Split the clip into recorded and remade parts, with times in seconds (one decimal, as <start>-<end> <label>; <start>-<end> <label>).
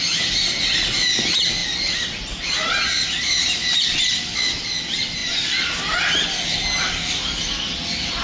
0.0-8.2 recorded